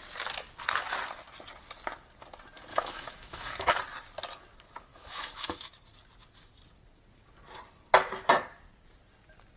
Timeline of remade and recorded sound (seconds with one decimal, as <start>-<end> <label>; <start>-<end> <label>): 0.0-2.7 recorded; 2.7-3.7 remade; 3.7-4.9 recorded; 4.9-5.7 remade; 5.7-9.6 recorded